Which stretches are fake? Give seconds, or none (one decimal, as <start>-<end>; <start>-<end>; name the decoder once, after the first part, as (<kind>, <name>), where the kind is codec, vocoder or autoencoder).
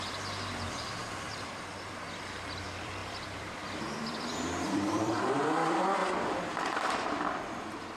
0.0-6.0 (vocoder, BigVGAN v2); 6.5-8.0